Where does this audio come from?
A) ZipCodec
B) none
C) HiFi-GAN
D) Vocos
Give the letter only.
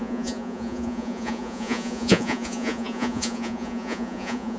D